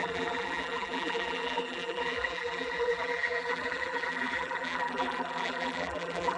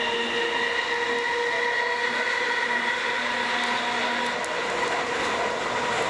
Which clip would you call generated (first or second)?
first